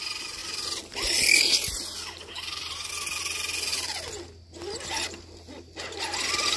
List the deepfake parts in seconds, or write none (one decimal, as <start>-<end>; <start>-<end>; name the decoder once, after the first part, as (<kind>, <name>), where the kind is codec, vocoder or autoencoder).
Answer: none